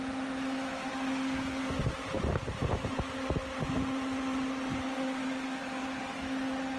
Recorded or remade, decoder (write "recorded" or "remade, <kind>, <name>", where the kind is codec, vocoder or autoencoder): recorded